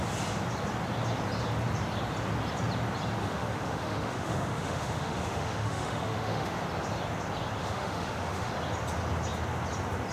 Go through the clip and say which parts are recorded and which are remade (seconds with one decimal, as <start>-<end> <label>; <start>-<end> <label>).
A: 0.0-3.2 recorded; 3.2-6.6 remade; 6.6-7.6 recorded; 7.6-8.5 remade; 8.5-10.1 recorded